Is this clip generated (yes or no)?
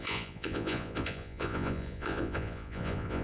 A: yes